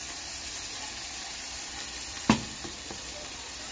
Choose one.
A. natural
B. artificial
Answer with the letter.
B